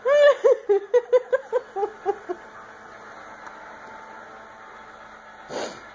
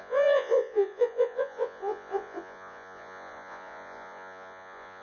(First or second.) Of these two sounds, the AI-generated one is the second